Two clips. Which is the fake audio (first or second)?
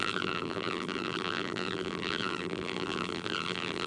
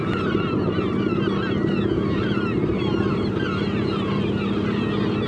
first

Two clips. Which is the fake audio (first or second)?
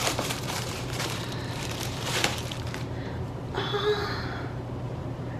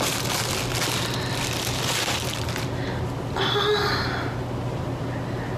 first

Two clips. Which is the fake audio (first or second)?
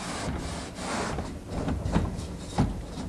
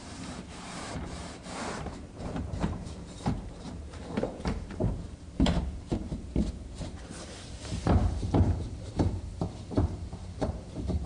second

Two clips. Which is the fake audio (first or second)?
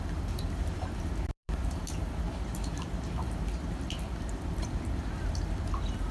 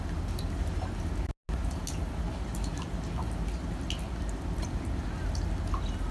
first